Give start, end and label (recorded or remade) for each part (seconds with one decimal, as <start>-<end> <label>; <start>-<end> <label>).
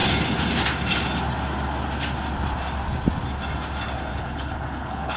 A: 0.0-4.1 recorded; 4.1-5.2 remade